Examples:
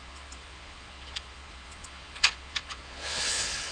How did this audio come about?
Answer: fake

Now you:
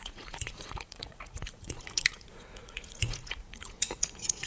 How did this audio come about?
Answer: fake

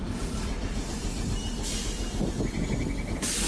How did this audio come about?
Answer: real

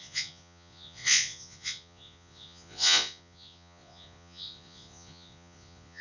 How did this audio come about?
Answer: fake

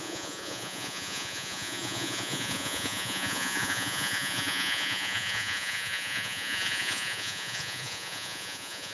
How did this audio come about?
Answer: fake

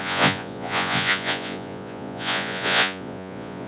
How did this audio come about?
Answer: fake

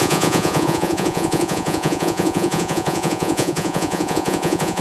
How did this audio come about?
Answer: fake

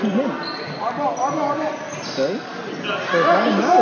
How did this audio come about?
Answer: real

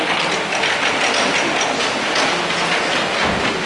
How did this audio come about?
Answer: real